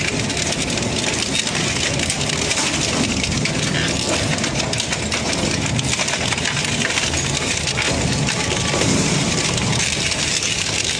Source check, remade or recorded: recorded